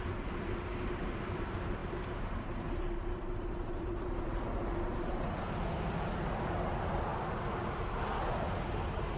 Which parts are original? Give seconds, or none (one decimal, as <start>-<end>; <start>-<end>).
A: 0.0-9.2